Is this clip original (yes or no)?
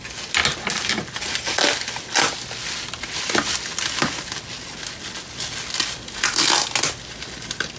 yes